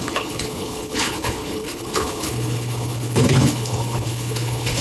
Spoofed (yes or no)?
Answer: yes